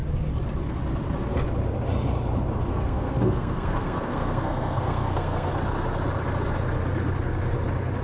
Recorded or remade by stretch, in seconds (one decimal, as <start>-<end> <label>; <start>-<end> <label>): 0.0-2.7 recorded; 2.7-5.5 remade; 5.5-8.0 recorded